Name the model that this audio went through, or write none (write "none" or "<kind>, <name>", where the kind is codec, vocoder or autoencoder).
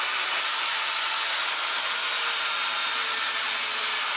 none